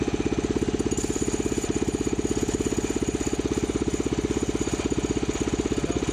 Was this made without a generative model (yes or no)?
yes